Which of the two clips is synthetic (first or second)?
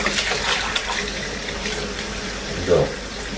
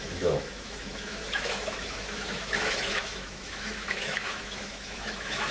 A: second